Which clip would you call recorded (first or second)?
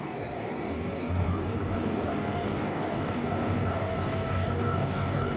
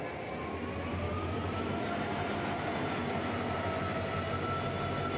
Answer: second